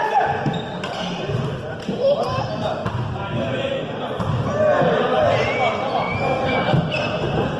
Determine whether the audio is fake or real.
real